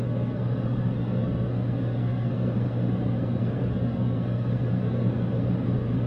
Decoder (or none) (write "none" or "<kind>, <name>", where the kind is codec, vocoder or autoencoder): codec, SNAC